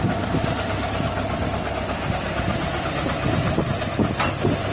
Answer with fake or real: real